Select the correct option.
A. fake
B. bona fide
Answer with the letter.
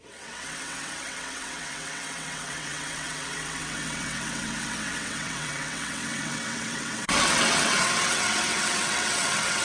A